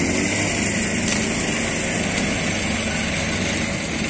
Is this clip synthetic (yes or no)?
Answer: no